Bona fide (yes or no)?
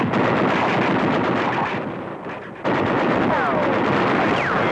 yes